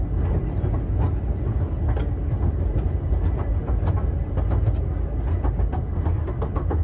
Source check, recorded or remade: recorded